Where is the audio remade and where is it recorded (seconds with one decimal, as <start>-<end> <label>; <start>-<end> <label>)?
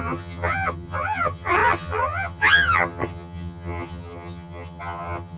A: 0.0-5.4 remade